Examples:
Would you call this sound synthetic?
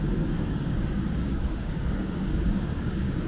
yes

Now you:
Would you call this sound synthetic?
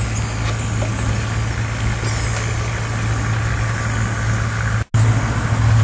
no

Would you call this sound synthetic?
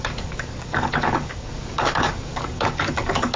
yes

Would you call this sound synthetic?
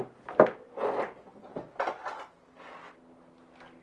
no